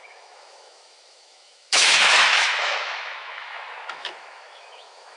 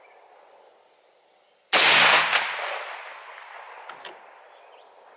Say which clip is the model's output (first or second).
first